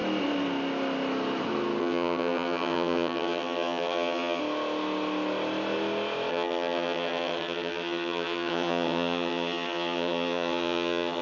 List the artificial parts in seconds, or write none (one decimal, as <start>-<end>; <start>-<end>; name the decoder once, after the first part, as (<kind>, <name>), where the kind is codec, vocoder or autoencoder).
1.8-4.4 (vocoder, HiFi-GAN); 6.3-11.2